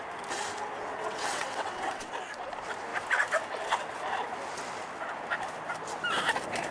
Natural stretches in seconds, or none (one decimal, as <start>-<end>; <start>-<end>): 0.0-0.9; 2.1-6.7